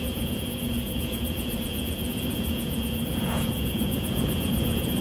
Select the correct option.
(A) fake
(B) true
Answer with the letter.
A